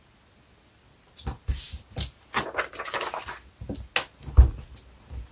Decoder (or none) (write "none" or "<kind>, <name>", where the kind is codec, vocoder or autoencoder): none